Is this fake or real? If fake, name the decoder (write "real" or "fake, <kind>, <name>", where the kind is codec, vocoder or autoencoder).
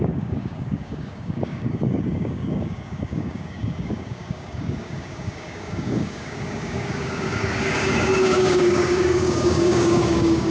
fake, codec, DAC